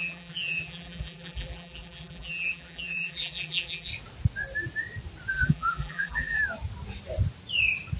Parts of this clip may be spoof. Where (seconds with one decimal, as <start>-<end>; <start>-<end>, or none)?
0.0-3.9; 5.3-6.4